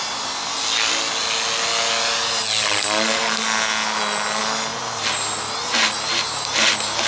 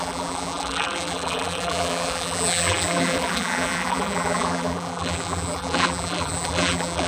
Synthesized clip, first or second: second